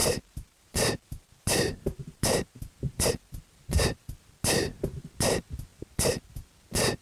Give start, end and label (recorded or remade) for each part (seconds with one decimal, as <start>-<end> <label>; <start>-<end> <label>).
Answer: 0.0-3.1 remade; 3.1-7.0 recorded